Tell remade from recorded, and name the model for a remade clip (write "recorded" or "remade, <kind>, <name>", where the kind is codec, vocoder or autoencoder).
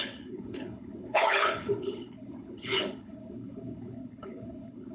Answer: remade, codec, HILCodec